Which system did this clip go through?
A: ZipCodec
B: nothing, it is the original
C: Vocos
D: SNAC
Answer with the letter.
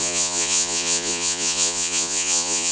C